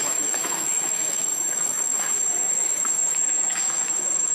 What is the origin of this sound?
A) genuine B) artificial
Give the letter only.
B